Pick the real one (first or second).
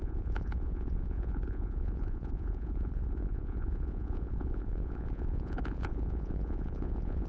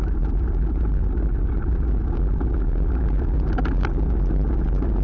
second